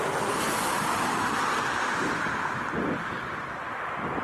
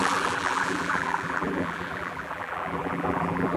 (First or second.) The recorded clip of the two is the first